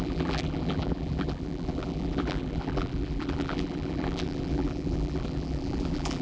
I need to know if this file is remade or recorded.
remade